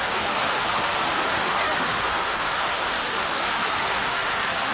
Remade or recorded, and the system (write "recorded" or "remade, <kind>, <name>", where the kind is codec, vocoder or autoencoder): remade, autoencoder, DAC-VAE